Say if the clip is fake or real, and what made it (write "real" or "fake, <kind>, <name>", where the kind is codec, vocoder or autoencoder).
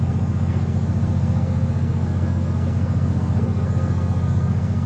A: fake, codec, SNAC